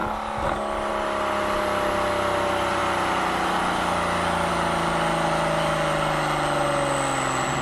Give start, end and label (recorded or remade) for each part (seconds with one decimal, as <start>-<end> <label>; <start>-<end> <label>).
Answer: 0.0-7.6 recorded